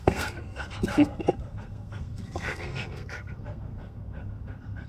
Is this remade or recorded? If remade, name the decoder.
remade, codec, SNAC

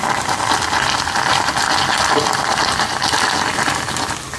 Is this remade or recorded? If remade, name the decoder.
recorded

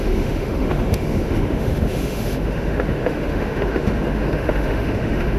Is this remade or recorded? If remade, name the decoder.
remade, autoencoder, DAC-VAE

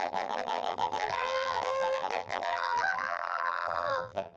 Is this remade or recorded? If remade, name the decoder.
remade, vocoder, BigVGAN v2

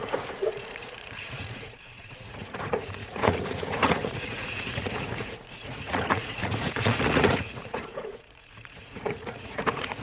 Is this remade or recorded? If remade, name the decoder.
remade, vocoder, Vocos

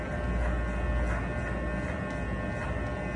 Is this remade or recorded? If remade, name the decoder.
recorded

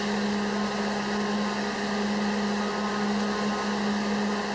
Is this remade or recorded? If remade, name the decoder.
recorded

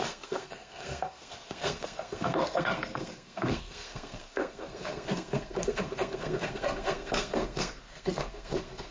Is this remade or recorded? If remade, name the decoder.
remade, codec, SNAC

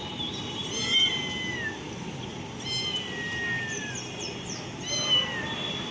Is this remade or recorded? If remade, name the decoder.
recorded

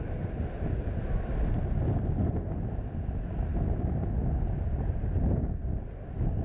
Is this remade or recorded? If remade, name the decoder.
recorded